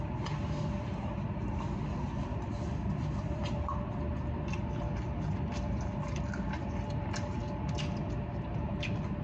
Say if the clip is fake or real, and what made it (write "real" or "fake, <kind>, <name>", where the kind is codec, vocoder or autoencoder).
real